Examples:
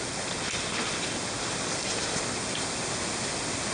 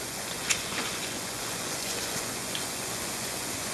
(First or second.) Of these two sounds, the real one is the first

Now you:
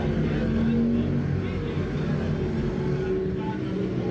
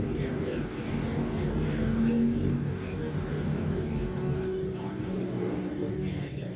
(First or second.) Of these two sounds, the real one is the first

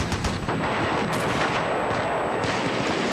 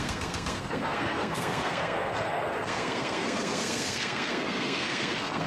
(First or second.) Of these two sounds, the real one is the first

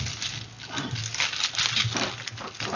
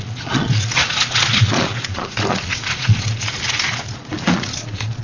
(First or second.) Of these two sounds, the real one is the first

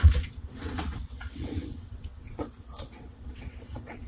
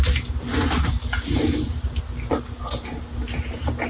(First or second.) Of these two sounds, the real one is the second